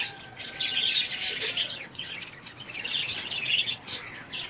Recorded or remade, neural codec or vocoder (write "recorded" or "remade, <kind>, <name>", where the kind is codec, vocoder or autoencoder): remade, vocoder, WaveNeXt